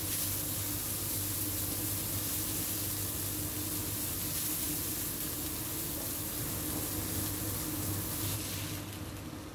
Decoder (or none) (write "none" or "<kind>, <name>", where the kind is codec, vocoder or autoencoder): none